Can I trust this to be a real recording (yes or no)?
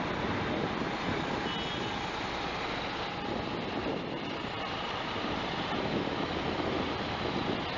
yes